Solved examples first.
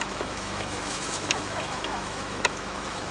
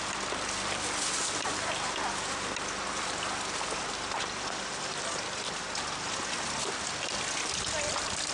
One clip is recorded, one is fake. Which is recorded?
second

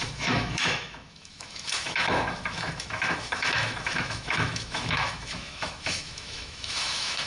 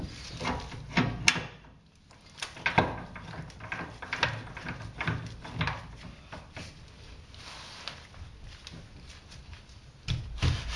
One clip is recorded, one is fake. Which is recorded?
second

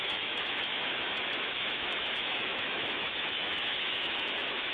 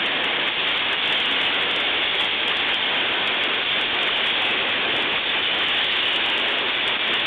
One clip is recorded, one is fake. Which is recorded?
second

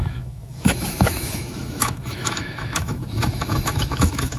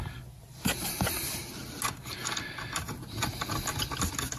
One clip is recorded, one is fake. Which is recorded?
second